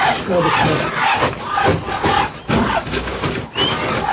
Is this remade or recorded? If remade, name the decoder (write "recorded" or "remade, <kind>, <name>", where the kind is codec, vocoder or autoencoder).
recorded